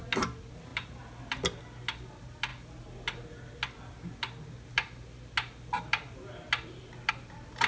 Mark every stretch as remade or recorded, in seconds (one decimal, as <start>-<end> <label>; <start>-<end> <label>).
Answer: 0.0-7.7 recorded